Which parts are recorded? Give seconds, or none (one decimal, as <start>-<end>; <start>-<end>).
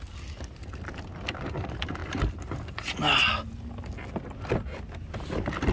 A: 0.0-5.7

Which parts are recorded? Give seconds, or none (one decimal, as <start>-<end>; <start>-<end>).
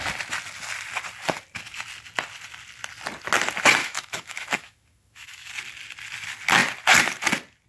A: 0.0-3.8; 5.5-7.7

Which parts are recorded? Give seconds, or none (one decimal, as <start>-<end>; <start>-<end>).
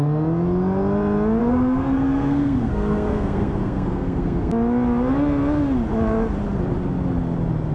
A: 0.0-1.4; 4.5-7.7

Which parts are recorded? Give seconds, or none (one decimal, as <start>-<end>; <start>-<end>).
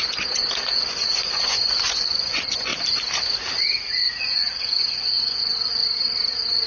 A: 2.7-4.2; 5.8-6.7